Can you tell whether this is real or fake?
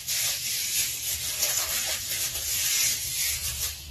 real